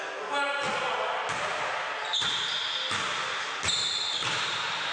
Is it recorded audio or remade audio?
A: recorded